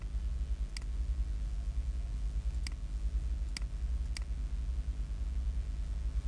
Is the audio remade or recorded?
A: recorded